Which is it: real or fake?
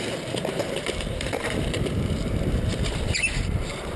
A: fake